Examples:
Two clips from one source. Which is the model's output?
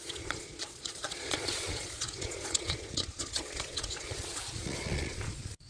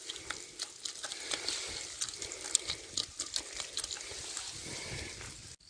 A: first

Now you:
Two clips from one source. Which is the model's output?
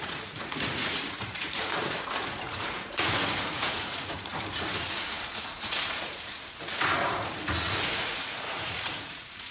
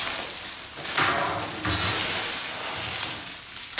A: first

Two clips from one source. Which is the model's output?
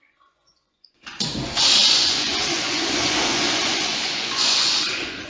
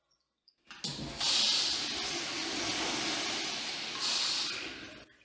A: first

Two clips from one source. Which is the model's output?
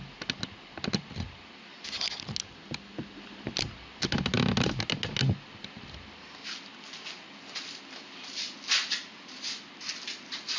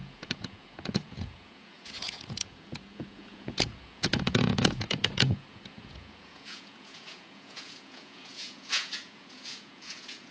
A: second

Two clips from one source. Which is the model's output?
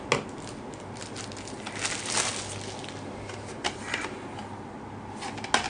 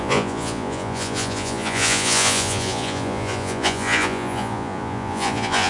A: second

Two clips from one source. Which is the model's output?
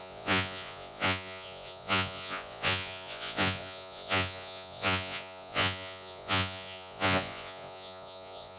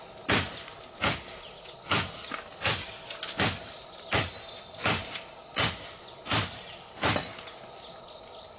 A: first